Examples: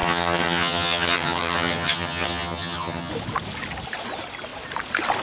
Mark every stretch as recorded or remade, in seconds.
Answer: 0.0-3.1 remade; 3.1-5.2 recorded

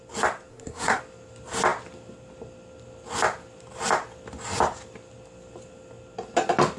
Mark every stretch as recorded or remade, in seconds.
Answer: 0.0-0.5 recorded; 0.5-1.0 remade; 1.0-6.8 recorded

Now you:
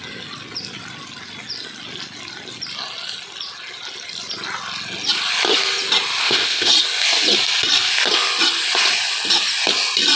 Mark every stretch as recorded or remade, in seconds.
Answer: 0.0-6.2 recorded; 6.2-6.7 remade; 6.7-10.2 recorded